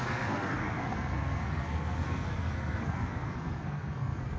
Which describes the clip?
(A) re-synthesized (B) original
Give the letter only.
A